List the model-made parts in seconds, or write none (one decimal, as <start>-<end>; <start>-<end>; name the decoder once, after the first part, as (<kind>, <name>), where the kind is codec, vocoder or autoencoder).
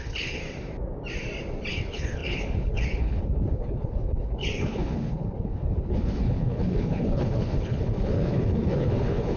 0.0-0.4 (codec, HILCodec); 1.7-9.4